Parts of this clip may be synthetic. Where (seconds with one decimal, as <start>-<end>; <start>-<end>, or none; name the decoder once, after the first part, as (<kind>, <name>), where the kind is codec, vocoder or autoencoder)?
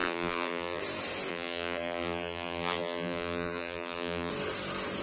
0.0-0.8 (vocoder, BigVGAN v2); 1.3-4.3